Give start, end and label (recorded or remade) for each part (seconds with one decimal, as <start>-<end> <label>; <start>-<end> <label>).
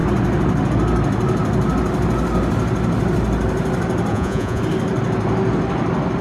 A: 0.0-4.1 recorded; 4.1-4.6 remade; 4.6-6.2 recorded